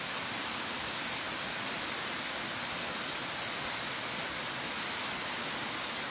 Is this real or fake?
real